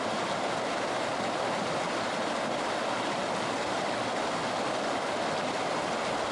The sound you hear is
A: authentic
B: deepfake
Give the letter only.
A